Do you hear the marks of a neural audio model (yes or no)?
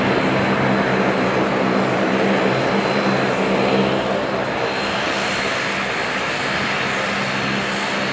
no